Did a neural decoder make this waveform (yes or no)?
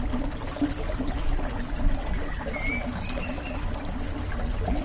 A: no